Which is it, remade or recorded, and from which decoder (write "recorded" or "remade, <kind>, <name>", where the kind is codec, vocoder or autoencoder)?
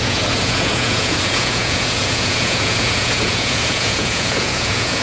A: remade, vocoder, Vocos